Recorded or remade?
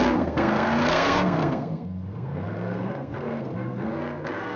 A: remade